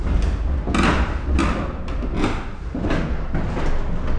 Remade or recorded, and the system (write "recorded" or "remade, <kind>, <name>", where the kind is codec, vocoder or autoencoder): recorded